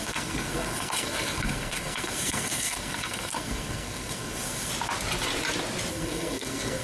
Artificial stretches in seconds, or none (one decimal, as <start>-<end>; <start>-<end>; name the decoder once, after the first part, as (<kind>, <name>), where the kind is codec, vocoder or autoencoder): 0.0-4.7 (codec, SNAC); 5.9-6.8